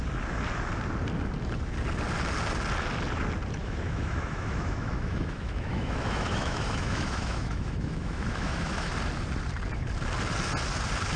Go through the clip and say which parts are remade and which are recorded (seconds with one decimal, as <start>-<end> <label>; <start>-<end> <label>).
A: 0.0-3.6 recorded; 3.6-8.9 remade; 8.9-11.2 recorded